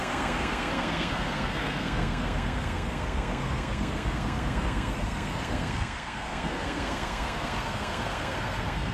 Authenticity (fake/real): fake